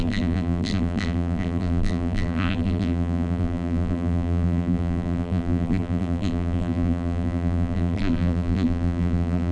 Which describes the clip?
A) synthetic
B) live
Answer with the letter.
A